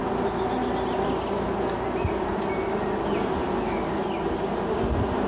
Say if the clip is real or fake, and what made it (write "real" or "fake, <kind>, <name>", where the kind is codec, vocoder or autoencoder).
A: real